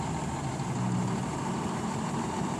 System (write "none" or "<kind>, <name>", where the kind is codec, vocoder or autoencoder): vocoder, BigVGAN v2